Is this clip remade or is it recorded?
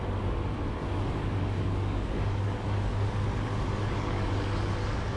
remade